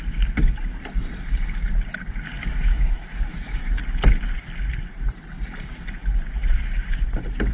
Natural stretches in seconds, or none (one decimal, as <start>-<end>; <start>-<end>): 0.0-2.4; 3.8-7.5